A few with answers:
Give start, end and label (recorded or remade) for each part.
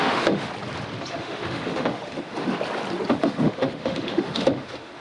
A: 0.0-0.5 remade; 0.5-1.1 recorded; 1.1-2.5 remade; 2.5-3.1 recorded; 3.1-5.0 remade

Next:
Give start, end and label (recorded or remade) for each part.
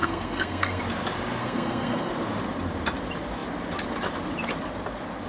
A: 0.0-0.8 remade; 0.8-1.4 recorded; 1.4-2.1 remade; 2.1-5.3 recorded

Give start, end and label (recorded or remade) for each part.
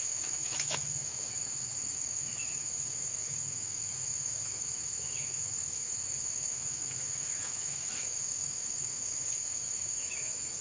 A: 0.0-10.6 remade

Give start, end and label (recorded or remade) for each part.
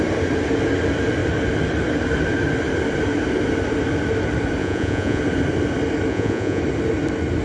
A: 0.0-4.6 recorded; 4.6-5.2 remade; 5.2-6.1 recorded; 6.1-6.6 remade; 6.6-7.4 recorded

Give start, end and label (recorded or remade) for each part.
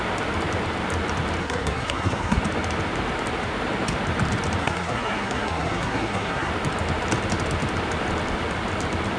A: 0.0-1.4 recorded; 1.4-2.4 remade; 2.4-4.6 recorded; 4.6-6.5 remade; 6.5-9.2 recorded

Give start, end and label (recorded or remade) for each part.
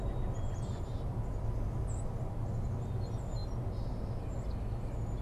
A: 0.0-5.2 recorded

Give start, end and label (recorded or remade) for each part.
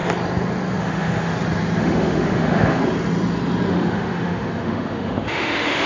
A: 0.0-0.8 recorded; 0.8-1.3 remade; 1.3-1.8 recorded; 1.8-2.8 remade; 2.8-3.7 recorded; 3.7-5.9 remade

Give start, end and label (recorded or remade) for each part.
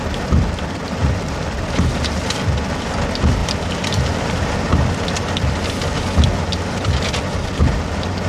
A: 0.0-1.0 recorded; 1.0-2.2 remade; 2.2-8.3 recorded